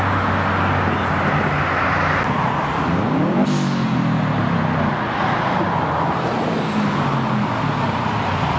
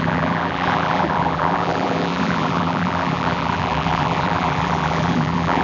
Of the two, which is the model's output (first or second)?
second